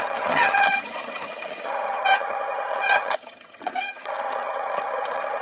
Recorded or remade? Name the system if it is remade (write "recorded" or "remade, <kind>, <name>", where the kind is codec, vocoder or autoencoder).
remade, vocoder, HiFi-GAN